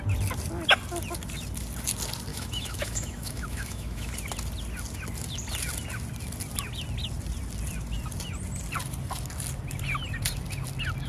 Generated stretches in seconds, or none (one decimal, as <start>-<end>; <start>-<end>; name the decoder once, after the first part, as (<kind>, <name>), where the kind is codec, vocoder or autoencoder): 2.3-4.1 (autoencoder, DAC-VAE)